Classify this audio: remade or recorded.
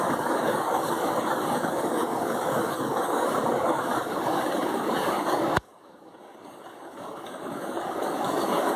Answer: remade